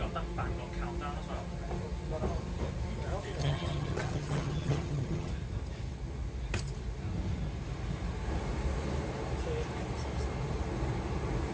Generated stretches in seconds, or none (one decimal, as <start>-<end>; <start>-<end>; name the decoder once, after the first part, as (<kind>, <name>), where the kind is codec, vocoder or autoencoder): 3.4-5.3 (vocoder, HiFi-GAN)